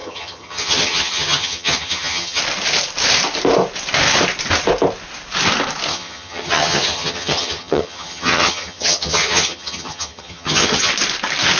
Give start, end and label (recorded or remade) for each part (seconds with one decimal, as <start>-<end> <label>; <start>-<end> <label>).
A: 0.0-2.4 remade; 2.4-5.9 recorded; 5.9-10.9 remade; 10.9-11.6 recorded